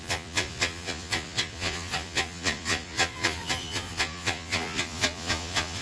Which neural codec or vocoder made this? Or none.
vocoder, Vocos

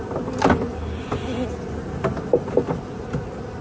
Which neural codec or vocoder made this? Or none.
none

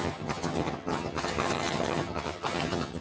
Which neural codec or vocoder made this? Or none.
vocoder, HiFi-GAN